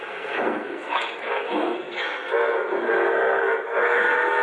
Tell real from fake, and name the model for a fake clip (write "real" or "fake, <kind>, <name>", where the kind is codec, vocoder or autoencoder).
fake, codec, SNAC